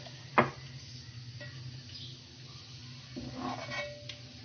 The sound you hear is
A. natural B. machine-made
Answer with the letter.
A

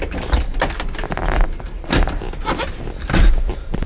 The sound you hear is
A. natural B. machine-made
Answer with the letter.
A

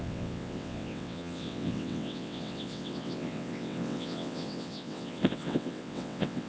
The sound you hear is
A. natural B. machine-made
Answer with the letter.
B